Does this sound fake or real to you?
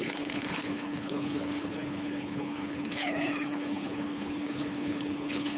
fake